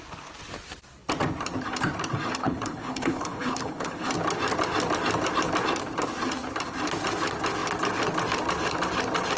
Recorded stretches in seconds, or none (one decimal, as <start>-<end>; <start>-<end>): 0.0-2.4; 4.1-9.4